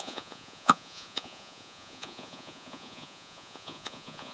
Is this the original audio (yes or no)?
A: no